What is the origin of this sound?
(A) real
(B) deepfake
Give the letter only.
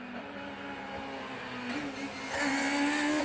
A